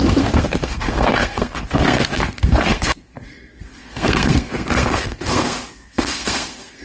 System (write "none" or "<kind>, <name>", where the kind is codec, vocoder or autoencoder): codec, SNAC